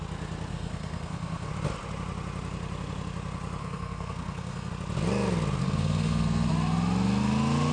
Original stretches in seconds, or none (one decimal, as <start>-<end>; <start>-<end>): 0.0-0.5; 1.5-3.6; 4.7-5.6; 6.5-7.7